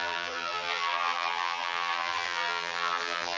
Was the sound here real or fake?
fake